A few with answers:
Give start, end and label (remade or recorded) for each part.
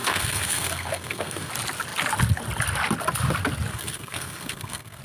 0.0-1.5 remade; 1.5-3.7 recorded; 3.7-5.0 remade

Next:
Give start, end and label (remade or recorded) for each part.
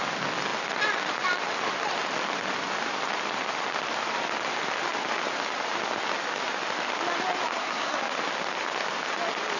0.0-7.5 recorded; 7.5-8.0 remade; 8.0-9.6 recorded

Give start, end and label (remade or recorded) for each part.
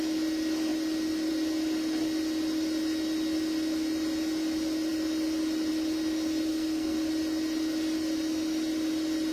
0.0-6.5 recorded; 6.5-7.1 remade; 7.1-9.3 recorded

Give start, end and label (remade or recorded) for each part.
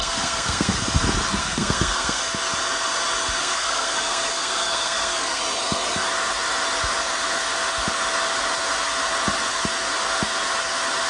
0.0-0.8 remade; 0.8-1.4 recorded; 1.4-2.2 remade; 2.2-3.4 recorded; 3.4-5.4 remade; 5.4-11.1 recorded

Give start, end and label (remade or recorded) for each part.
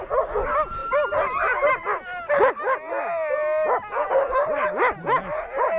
0.0-5.8 recorded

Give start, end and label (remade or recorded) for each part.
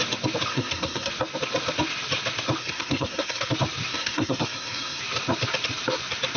0.0-0.5 recorded; 0.5-1.1 remade; 1.1-2.6 recorded; 2.6-3.5 remade; 3.5-3.9 recorded; 3.9-5.0 remade; 5.0-6.4 recorded